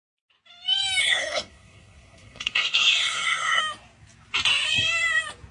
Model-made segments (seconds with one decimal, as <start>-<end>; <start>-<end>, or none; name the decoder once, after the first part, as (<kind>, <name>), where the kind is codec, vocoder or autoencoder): 1.0-3.6 (codec, SNAC)